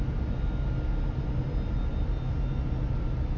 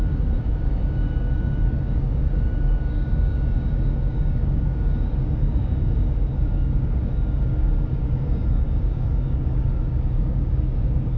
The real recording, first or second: first